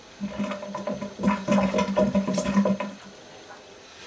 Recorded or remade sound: recorded